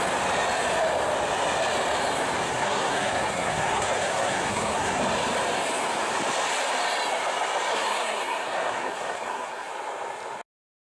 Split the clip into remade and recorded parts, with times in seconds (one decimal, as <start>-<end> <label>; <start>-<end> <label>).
0.0-2.5 recorded; 2.5-5.0 remade; 5.0-7.7 recorded; 7.7-9.7 remade; 9.7-10.9 recorded